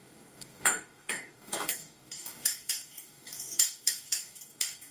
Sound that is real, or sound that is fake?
fake